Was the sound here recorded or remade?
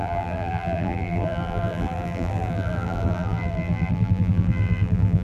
remade